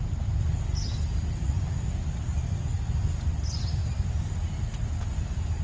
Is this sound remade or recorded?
recorded